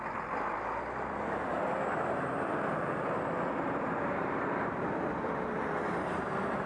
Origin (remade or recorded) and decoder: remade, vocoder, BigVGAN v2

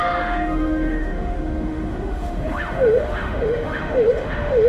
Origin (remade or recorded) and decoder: remade, autoencoder, DAC-VAE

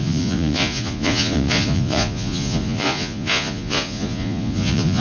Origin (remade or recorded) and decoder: remade, vocoder, Vocos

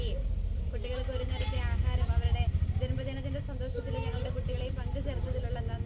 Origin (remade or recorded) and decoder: recorded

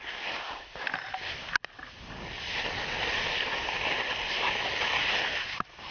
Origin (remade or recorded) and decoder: recorded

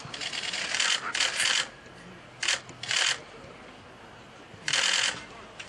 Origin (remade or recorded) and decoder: recorded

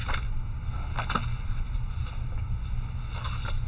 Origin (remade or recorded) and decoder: recorded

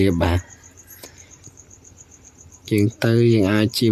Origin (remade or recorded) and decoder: remade, vocoder, BigVGAN v2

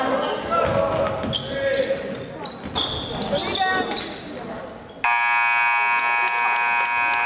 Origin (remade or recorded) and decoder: recorded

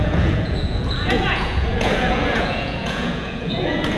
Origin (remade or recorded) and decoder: remade, vocoder, Vocos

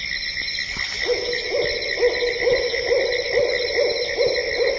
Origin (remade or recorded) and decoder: recorded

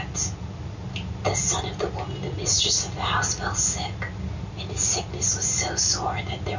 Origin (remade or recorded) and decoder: recorded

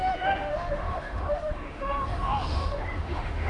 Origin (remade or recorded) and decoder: remade, autoencoder, DAC-VAE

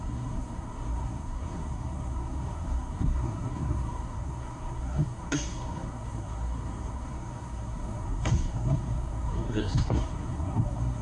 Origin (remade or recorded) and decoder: remade, codec, SNAC